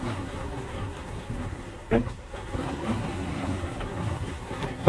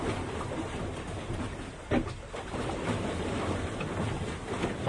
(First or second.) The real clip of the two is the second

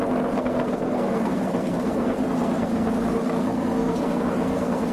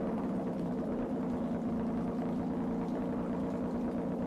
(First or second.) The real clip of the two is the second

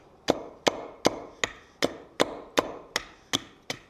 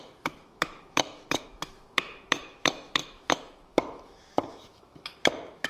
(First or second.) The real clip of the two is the first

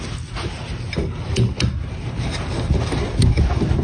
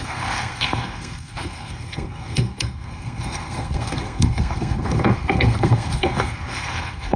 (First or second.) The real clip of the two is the first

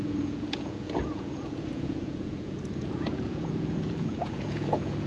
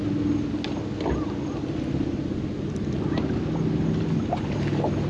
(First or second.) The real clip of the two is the second